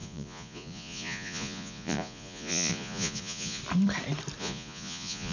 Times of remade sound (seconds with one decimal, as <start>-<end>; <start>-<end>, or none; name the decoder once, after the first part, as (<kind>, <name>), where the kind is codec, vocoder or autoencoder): 0.0-3.6 (vocoder, Vocos); 4.4-5.3